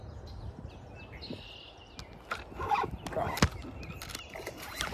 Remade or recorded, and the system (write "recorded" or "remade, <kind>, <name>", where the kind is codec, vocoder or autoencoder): recorded